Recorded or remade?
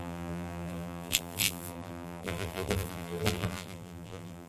remade